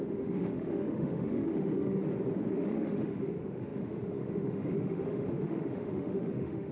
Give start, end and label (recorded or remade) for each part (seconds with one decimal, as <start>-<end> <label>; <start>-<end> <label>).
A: 0.0-2.0 remade; 2.0-2.5 recorded; 2.5-6.7 remade